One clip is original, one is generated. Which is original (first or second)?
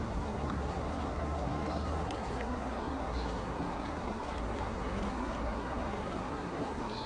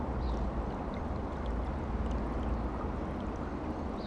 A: second